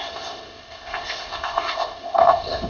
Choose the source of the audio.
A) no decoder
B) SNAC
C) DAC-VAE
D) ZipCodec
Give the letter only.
D